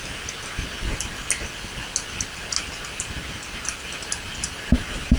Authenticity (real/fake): real